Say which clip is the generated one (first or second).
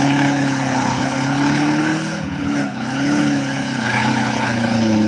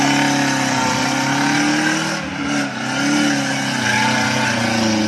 first